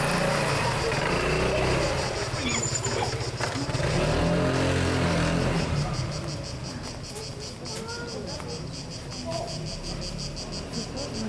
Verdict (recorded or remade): recorded